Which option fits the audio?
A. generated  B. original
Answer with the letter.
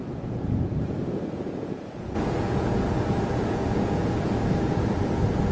A